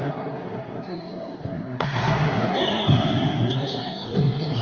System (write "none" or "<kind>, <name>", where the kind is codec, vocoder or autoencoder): codec, SNAC